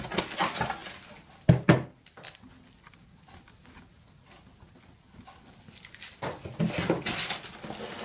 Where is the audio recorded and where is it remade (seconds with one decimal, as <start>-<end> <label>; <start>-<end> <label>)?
0.0-8.0 recorded